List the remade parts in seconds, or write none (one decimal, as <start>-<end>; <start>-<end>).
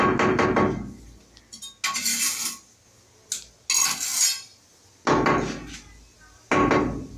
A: none